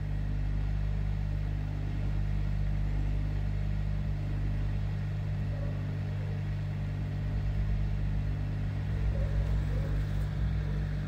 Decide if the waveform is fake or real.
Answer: real